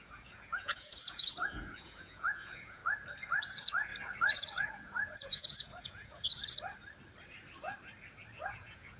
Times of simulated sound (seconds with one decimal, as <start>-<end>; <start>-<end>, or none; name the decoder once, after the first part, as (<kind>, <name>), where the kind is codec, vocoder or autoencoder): 0.0-2.8 (vocoder, Vocos); 3.4-3.9; 4.4-6.3; 8.5-9.0